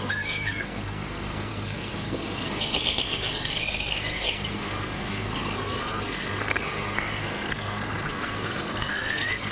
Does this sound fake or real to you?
fake